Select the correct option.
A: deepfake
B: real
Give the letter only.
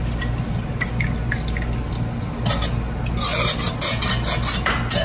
B